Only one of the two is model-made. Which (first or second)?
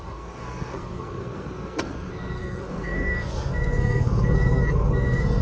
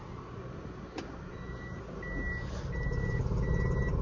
first